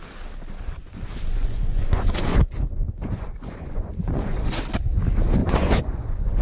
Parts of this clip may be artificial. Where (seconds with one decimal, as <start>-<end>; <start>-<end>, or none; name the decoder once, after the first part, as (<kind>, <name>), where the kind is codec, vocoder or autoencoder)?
0.8-4.6 (vocoder, Vocos); 5.4-6.4